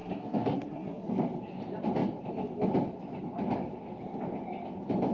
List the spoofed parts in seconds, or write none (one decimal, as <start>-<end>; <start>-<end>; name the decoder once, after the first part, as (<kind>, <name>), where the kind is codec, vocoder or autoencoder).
0.0-1.1 (codec, SNAC)